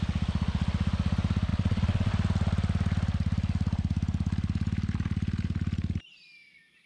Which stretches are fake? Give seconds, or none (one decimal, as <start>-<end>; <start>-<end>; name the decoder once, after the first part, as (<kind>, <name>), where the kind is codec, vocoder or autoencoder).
1.5-2.1 (vocoder, WaveNeXt)